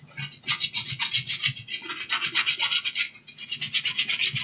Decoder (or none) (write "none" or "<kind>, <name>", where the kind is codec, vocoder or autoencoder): none